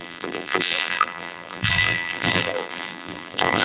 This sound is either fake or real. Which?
fake